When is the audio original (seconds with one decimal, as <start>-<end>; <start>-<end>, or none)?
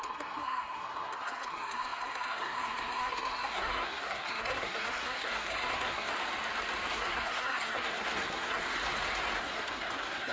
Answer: 6.1-6.9; 8.7-9.4